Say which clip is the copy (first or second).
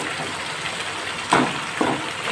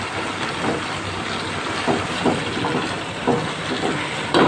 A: second